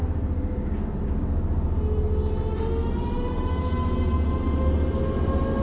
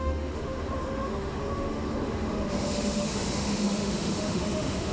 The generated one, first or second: second